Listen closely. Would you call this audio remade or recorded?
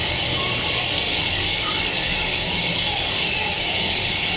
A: remade